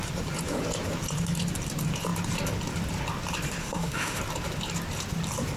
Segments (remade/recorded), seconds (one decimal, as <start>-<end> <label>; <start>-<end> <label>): 0.0-3.6 recorded; 3.6-4.2 remade; 4.2-5.6 recorded